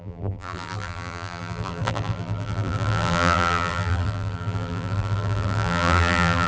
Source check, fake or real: fake